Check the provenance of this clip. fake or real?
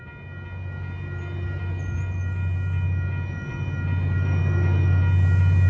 real